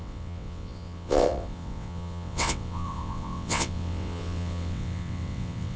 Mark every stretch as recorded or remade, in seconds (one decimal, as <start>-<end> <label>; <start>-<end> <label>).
0.0-5.8 remade